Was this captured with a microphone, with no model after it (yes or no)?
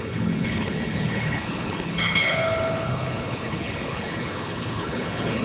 no